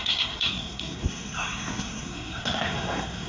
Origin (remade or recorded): remade